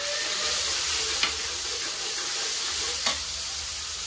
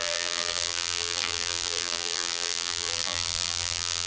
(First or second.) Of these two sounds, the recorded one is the first